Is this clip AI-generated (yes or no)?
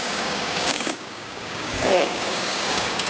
yes